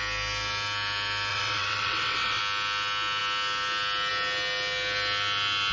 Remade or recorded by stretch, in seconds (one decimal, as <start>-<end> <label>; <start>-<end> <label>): 0.0-1.3 recorded; 1.3-2.4 remade; 2.4-5.7 recorded